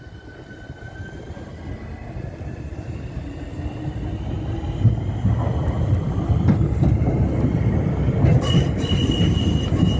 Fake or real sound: real